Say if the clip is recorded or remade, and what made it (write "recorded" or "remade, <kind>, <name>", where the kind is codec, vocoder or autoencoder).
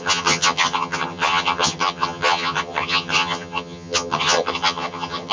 remade, vocoder, HiFi-GAN